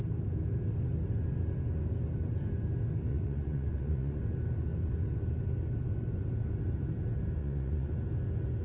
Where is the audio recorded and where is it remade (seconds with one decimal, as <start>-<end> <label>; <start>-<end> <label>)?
0.0-3.1 recorded; 3.1-4.2 remade; 4.2-7.4 recorded; 7.4-7.9 remade; 7.9-8.6 recorded